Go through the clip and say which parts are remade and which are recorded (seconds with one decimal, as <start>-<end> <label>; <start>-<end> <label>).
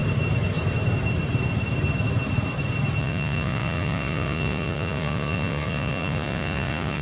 0.0-3.0 recorded; 3.0-7.0 remade